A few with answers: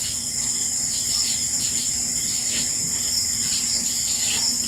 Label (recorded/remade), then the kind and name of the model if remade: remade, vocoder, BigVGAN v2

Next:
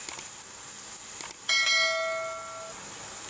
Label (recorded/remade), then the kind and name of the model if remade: recorded